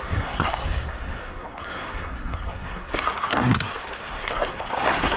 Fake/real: fake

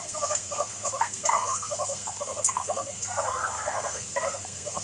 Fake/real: fake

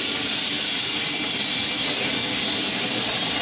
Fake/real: real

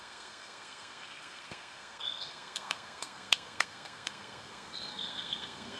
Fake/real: fake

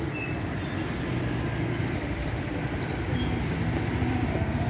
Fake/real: real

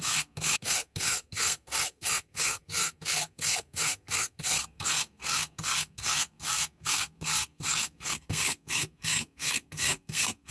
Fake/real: fake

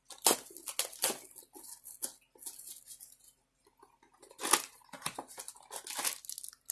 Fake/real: real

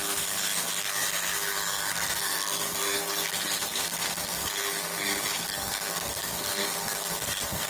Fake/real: fake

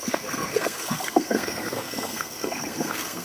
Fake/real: fake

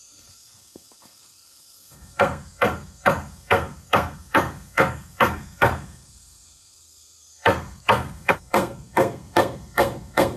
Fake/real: fake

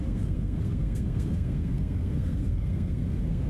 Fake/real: fake